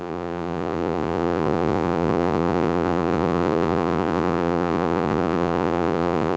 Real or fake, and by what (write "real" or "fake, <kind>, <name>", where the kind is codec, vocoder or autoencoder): fake, vocoder, Vocos